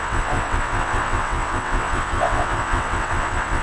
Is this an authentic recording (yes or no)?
no